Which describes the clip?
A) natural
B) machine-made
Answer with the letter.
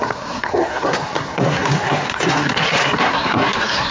B